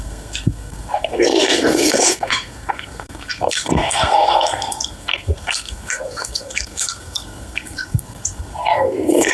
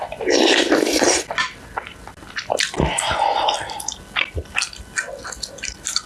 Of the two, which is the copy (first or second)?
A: first